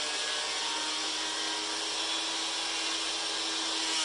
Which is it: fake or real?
real